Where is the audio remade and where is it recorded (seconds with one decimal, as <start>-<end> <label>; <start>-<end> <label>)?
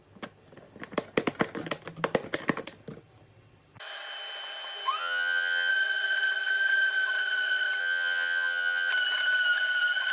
0.0-5.0 recorded; 5.0-5.7 remade; 5.7-7.8 recorded; 7.8-8.9 remade; 8.9-10.1 recorded